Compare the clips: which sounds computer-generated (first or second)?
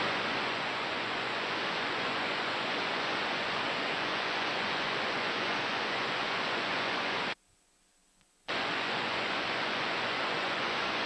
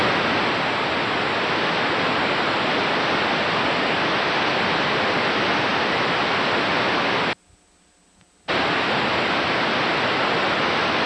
first